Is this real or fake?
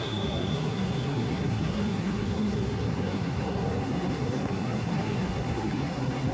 fake